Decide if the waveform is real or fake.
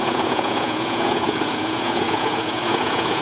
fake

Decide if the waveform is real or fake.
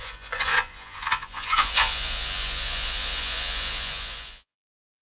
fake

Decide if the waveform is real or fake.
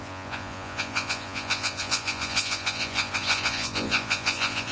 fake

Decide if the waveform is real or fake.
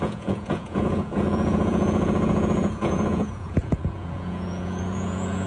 fake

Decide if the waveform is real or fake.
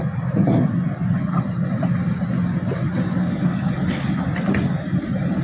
real